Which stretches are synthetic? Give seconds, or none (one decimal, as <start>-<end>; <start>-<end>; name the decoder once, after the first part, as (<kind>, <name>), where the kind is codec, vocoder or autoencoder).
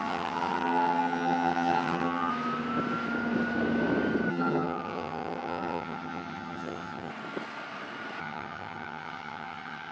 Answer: 0.0-2.3 (vocoder, HiFi-GAN); 4.3-7.1; 8.2-9.9